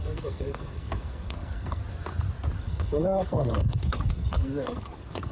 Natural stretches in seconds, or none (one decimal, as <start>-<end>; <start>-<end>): 1.8-2.6